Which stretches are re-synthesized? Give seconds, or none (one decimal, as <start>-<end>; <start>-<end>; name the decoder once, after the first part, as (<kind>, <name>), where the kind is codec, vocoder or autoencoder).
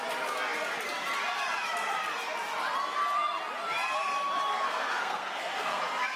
4.5-5.8 (codec, SNAC)